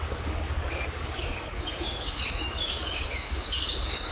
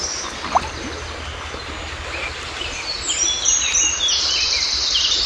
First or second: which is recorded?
second